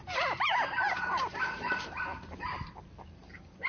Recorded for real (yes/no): yes